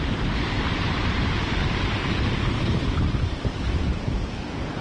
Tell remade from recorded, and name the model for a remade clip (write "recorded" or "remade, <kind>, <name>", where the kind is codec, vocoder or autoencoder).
remade, vocoder, BigVGAN v2